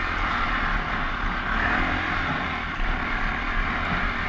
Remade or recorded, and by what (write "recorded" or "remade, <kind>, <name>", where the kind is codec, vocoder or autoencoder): recorded